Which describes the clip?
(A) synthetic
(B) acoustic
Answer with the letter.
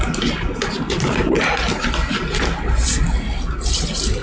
B